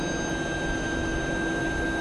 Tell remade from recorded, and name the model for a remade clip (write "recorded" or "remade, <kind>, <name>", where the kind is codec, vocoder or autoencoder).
recorded